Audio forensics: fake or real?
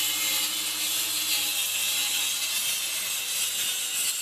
real